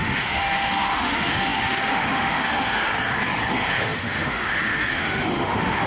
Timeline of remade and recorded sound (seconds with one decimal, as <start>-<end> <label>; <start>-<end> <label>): 0.0-2.9 remade; 2.9-3.5 recorded; 3.5-5.9 remade